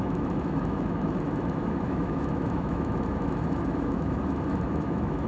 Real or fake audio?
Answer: fake